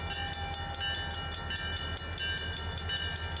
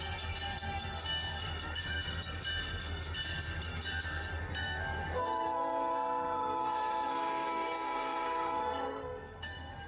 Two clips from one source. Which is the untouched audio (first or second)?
first